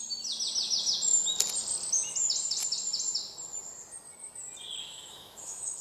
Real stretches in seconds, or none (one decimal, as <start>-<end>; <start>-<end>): 0.0-4.8